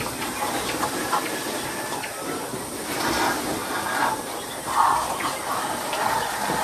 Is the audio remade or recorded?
recorded